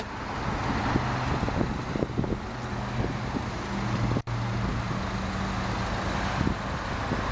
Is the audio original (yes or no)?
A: yes